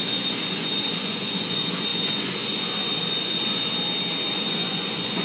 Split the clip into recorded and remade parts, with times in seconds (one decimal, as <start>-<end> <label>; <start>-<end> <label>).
0.0-3.7 remade; 3.7-4.3 recorded; 4.3-5.2 remade